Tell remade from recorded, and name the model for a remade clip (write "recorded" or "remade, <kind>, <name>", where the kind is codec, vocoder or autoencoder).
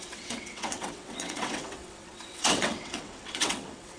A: remade, vocoder, WaveNeXt